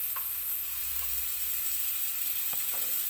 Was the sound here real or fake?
fake